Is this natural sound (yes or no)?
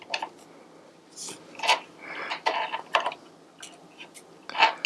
yes